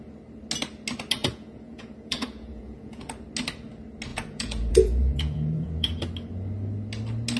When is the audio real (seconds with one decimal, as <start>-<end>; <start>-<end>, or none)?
0.0-1.2; 3.0-4.1; 6.0-7.4